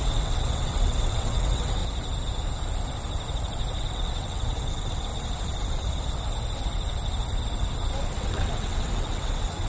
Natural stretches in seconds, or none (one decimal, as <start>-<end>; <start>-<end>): 1.8-3.9; 5.1-8.2